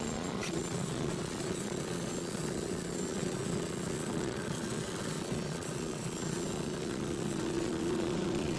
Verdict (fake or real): fake